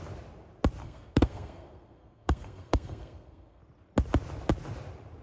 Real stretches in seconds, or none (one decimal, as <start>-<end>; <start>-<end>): 0.0-0.8; 3.6-5.2